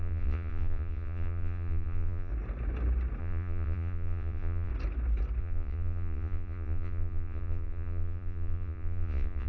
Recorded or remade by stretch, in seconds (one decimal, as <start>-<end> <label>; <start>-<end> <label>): 0.0-2.3 remade; 2.3-3.2 recorded; 3.2-4.7 remade; 4.7-5.4 recorded; 5.4-9.5 remade